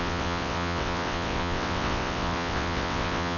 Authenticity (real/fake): fake